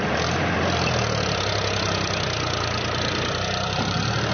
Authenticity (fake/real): fake